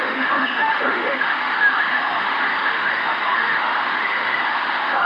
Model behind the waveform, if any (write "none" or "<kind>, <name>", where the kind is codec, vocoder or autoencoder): autoencoder, DAC-VAE